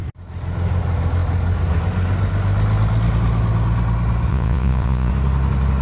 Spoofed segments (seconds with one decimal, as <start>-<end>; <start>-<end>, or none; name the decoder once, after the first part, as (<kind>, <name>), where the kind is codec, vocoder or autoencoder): 4.3-5.1 (vocoder, Vocos)

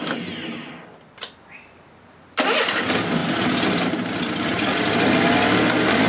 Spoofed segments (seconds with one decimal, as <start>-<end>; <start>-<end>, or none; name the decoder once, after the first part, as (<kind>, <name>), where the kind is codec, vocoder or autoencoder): none

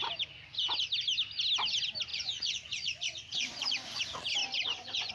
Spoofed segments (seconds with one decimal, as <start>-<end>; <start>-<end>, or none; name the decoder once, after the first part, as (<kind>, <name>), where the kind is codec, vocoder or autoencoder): 2.1-4.0 (vocoder, Vocos); 4.4-5.1

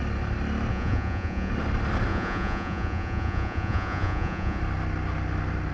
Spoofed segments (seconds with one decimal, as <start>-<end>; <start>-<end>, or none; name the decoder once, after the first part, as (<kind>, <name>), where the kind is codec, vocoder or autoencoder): 0.7-1.5 (vocoder, Vocos); 2.1-4.6

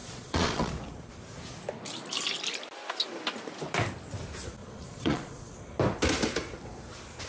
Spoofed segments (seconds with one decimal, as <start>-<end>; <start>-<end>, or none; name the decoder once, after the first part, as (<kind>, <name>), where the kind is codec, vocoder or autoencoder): 0.0-0.7 (vocoder, Vocos); 4.6-5.5

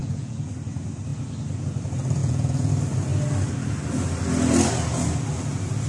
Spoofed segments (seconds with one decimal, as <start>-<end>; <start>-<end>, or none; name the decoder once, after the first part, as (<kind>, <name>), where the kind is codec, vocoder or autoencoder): 0.0-0.5 (vocoder, Vocos); 2.2-2.7

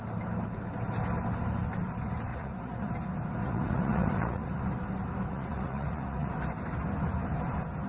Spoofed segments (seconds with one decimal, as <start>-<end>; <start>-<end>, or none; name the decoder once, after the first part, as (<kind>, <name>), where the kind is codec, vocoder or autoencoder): 2.3-2.9 (vocoder, Vocos); 3.4-4.6; 5.3-6.3

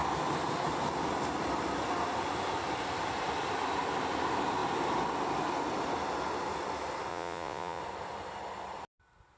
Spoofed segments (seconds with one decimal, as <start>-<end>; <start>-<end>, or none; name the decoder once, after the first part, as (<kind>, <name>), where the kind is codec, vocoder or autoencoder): 7.1-7.8 (vocoder, Vocos)